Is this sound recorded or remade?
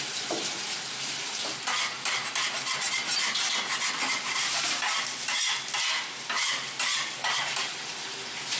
recorded